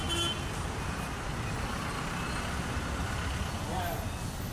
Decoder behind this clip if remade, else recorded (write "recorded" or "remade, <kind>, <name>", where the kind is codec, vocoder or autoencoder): recorded